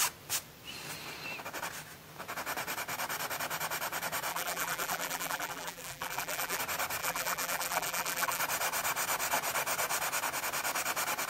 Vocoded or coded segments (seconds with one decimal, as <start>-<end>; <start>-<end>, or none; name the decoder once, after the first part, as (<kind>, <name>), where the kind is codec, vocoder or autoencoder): 4.3-6.6 (vocoder, BigVGAN v2); 7.0-8.4